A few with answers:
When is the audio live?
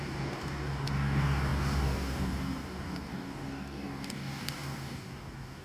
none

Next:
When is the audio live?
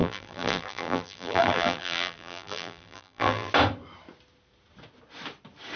3.5-5.8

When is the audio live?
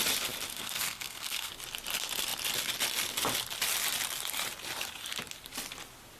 0.0-0.5; 1.5-6.2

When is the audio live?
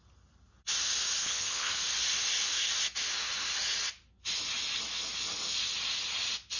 0.0-1.2; 1.7-6.6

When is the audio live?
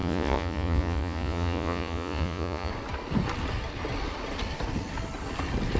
2.7-5.8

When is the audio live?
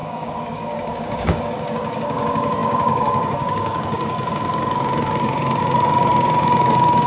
none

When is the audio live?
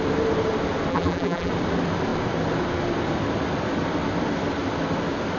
0.0-0.9; 1.5-5.4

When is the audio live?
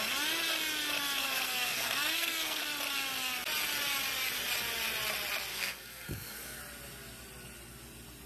0.0-1.2; 2.6-5.5; 6.6-8.3